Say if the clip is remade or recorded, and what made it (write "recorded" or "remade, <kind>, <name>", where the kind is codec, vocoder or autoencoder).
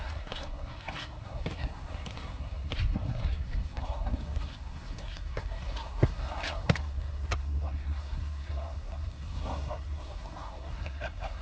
remade, codec, SNAC